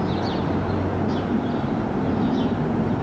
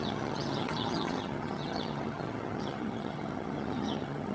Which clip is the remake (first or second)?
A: second